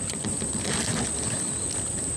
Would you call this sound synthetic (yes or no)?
no